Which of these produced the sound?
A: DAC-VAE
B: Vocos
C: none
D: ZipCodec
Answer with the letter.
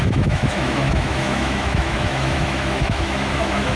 A